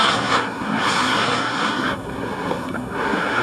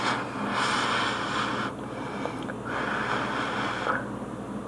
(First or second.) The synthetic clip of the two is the first